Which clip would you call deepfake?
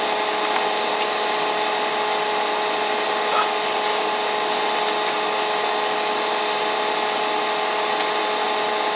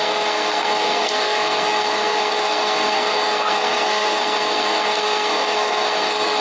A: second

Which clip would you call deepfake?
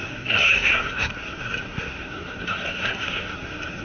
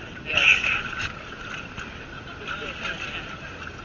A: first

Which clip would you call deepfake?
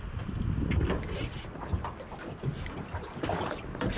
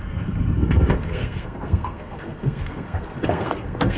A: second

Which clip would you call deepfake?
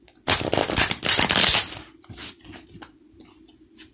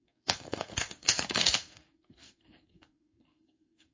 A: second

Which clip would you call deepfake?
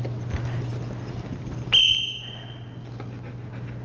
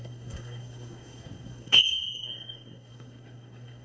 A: second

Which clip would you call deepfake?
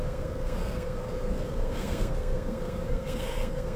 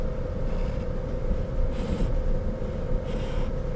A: first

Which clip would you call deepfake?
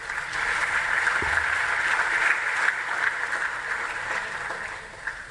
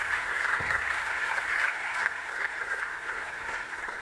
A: second